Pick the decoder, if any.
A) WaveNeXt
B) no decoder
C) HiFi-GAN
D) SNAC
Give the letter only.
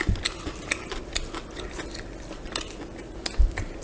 B